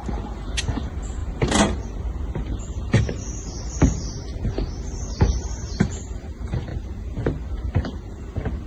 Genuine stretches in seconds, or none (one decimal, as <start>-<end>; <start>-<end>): 4.3-5.2